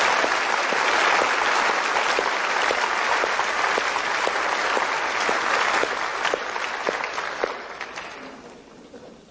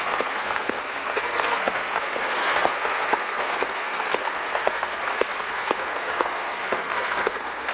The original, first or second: first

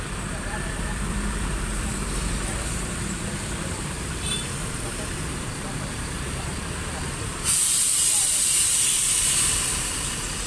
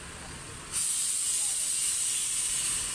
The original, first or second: second